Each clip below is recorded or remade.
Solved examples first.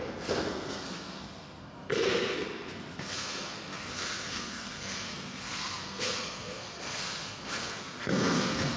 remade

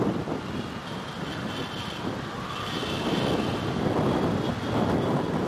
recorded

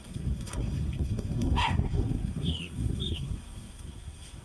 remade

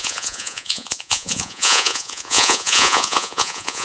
remade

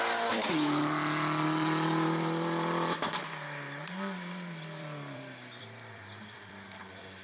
remade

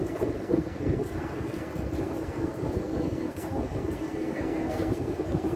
remade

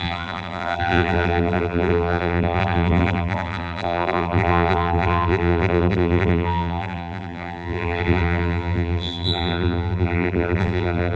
remade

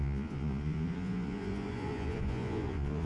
remade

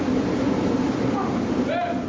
recorded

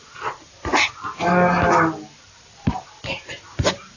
recorded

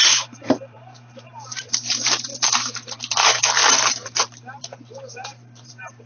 remade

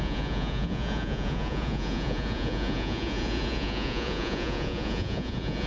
remade